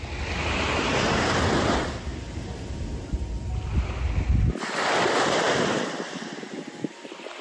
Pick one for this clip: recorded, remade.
recorded